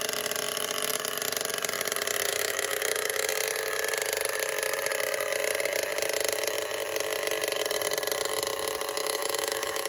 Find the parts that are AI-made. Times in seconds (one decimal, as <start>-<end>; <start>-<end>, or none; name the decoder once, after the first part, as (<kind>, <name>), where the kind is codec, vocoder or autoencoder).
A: 2.3-3.3 (autoencoder, DAC-VAE); 9.0-9.9